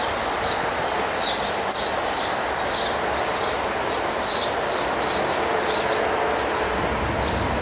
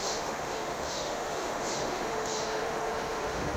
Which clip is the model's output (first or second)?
second